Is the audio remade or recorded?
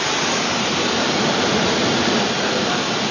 recorded